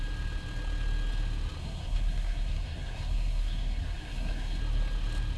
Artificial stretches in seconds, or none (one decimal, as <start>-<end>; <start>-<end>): 1.6-4.6